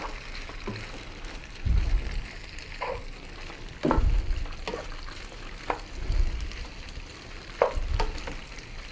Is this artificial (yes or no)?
no